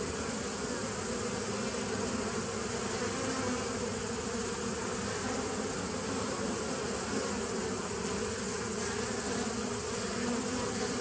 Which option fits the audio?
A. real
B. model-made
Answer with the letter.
A